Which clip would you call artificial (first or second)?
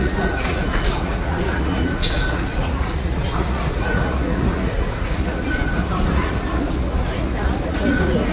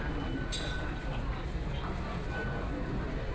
first